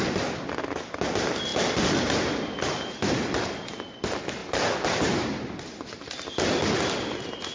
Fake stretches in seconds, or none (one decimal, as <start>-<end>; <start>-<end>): none